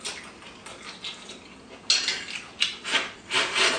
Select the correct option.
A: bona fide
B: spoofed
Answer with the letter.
A